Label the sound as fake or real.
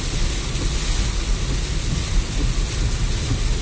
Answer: real